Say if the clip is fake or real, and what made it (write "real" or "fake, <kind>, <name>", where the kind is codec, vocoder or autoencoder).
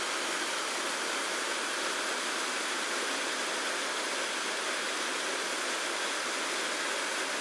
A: real